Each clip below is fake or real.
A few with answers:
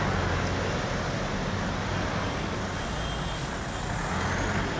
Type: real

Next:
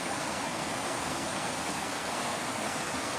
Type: fake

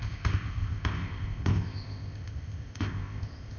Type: fake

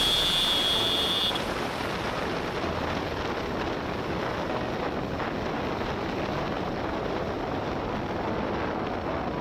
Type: real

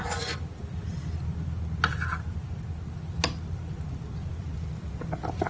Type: real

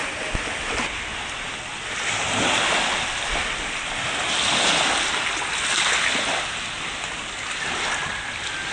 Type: real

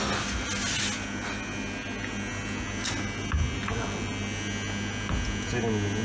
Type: real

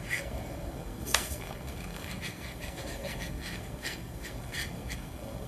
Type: fake